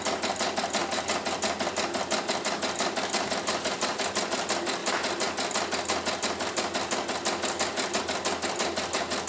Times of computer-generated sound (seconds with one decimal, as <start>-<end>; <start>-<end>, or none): none